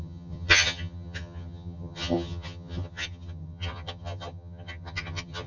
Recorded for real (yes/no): no